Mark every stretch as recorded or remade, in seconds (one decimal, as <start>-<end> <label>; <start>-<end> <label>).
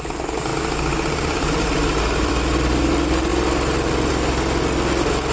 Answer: 0.0-3.3 remade; 3.3-4.1 recorded; 4.1-5.3 remade